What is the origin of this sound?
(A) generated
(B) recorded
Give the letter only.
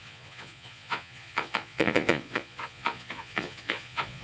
A